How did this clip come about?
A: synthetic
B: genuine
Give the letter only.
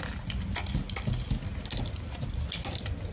B